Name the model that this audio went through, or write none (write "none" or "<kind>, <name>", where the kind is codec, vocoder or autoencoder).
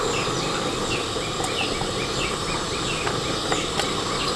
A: vocoder, BigVGAN v2